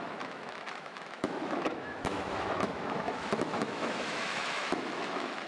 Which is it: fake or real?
fake